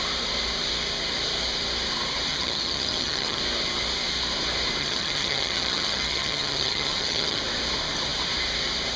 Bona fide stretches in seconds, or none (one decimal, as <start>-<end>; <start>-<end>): 0.0-2.3; 3.4-4.8; 7.4-9.0